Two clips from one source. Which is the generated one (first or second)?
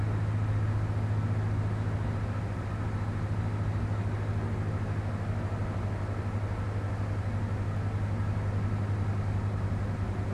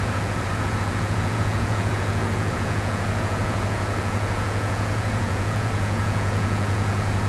second